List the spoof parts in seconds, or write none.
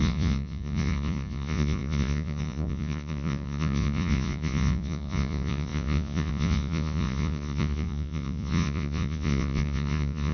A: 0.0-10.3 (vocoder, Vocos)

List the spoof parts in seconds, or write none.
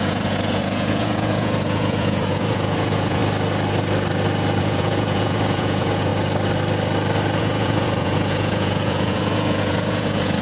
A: 0.0-3.2 (vocoder, Vocos); 4.6-6.1; 7.4-10.4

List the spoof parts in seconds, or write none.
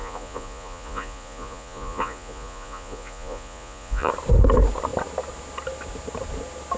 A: 0.0-4.1 (vocoder, Vocos)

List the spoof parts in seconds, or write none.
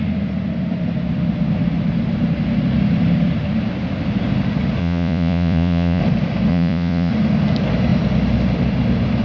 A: 4.8-6.0 (vocoder, Vocos); 6.5-7.1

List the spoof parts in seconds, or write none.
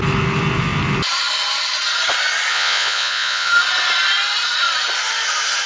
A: 2.5-3.5 (vocoder, Vocos)